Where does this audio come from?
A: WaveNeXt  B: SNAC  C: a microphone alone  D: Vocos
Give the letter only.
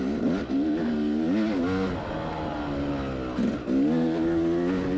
C